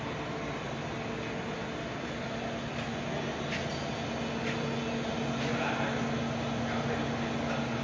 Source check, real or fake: real